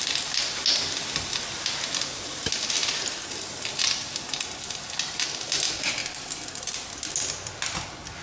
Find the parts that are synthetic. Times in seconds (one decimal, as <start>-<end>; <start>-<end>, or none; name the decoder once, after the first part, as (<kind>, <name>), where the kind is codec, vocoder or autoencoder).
2.8-4.0 (vocoder, BigVGAN v2); 6.0-6.7